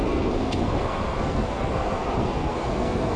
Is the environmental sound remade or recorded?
remade